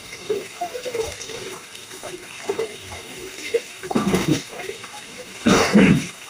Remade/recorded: remade